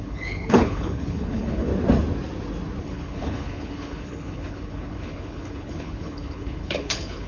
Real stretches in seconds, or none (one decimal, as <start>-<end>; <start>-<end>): 1.7-2.8